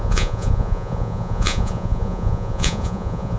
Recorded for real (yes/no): no